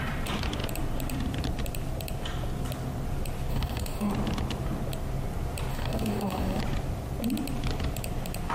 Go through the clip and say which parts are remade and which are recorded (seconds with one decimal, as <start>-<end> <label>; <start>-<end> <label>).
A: 0.0-3.5 recorded; 3.5-4.1 remade; 4.1-5.7 recorded; 5.7-6.6 remade; 6.6-8.5 recorded